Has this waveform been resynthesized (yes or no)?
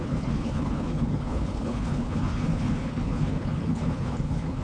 yes